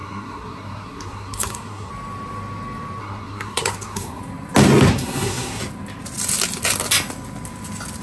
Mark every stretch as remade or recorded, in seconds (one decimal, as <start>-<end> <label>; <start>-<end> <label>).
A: 0.0-1.9 remade; 1.9-3.0 recorded; 3.0-4.2 remade; 4.2-4.9 recorded; 4.9-5.6 remade; 5.6-8.0 recorded